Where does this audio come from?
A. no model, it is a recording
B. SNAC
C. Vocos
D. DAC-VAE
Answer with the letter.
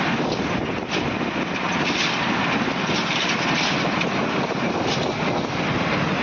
A